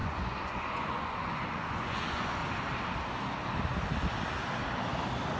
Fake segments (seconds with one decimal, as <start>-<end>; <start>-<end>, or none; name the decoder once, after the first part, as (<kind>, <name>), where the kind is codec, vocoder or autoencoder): 0.0-2.4 (vocoder, Vocos)

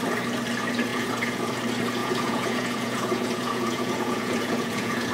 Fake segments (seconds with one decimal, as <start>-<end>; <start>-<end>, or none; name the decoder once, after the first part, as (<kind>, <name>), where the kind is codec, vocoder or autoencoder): 0.9-1.5 (vocoder, Vocos); 2.0-5.1

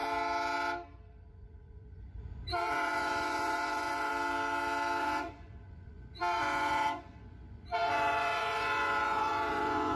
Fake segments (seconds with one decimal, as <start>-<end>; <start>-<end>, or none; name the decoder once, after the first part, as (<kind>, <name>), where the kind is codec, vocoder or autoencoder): 1.3-4.1 (vocoder, Vocos); 5.0-10.0

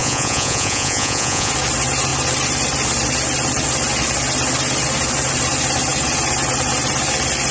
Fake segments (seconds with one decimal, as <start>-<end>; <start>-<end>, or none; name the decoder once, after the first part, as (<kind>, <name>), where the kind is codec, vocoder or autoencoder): 0.0-1.5 (vocoder, Vocos)

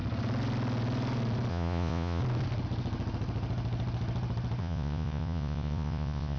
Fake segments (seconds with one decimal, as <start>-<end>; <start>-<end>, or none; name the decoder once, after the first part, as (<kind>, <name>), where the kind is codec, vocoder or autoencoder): 1.5-2.2 (vocoder, Vocos); 4.6-6.4

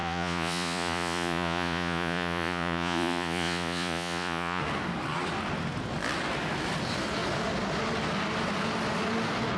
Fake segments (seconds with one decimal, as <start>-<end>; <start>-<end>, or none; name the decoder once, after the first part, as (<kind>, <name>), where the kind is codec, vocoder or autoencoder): 0.0-4.6 (vocoder, Vocos)